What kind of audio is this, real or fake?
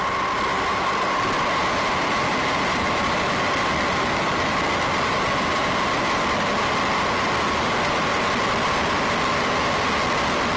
real